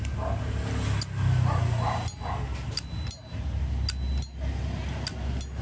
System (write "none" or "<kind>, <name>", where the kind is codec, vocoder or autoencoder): none